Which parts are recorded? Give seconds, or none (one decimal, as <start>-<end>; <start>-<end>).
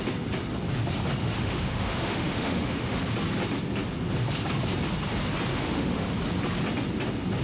0.0-1.2; 3.0-5.5; 6.1-7.4